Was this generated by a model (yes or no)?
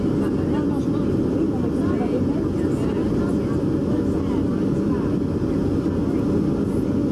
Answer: no